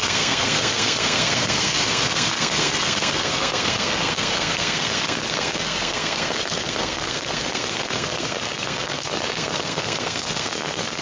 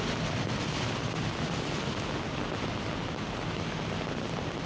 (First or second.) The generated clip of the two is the first